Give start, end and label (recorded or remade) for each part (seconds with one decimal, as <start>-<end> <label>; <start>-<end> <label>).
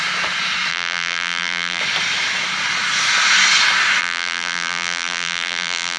0.0-0.7 recorded; 0.7-1.8 remade; 1.8-4.0 recorded; 4.0-6.0 remade